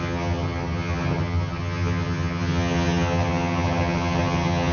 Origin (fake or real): fake